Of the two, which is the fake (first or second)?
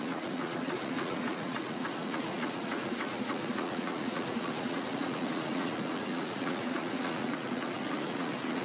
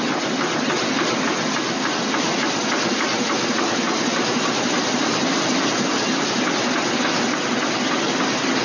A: first